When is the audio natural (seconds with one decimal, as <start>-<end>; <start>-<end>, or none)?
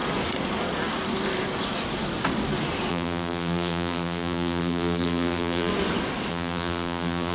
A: 0.0-2.9; 5.7-6.3